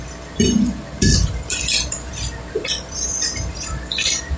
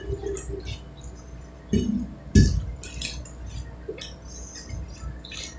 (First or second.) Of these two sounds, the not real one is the first